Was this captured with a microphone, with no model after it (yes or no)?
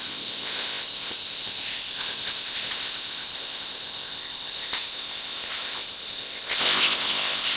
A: no